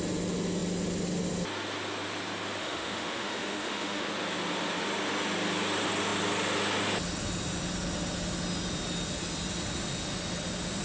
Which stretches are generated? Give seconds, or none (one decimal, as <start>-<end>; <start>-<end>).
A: 2.6-4.1